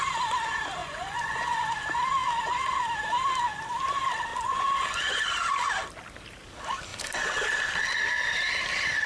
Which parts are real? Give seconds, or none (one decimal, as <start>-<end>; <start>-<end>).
0.0-0.8; 1.7-4.3; 5.3-9.1